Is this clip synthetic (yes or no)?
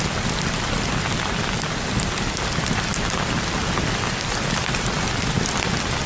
no